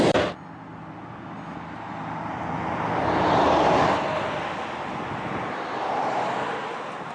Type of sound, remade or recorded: recorded